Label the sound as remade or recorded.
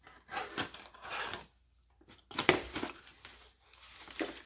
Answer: recorded